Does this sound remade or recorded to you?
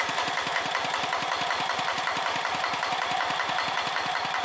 recorded